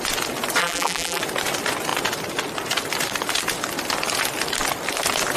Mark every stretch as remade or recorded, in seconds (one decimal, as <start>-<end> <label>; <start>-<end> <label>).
0.0-0.6 recorded; 0.6-1.2 remade; 1.2-5.4 recorded